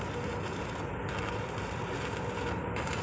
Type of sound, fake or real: real